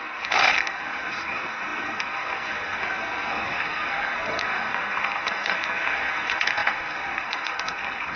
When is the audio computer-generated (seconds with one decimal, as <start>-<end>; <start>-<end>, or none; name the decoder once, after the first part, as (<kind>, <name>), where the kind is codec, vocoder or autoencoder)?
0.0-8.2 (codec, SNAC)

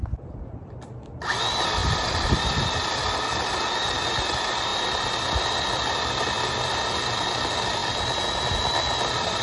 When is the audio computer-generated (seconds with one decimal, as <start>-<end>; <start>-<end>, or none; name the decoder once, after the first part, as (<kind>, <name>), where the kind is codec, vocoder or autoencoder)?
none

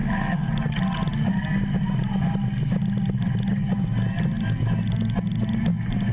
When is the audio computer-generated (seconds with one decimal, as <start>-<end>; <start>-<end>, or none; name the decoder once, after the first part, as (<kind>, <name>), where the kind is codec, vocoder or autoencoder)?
0.0-0.5 (codec, SNAC)